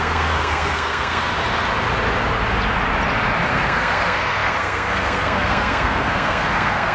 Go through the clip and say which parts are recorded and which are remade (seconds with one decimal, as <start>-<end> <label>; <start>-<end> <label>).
0.0-1.3 remade; 1.3-3.5 recorded; 3.5-6.9 remade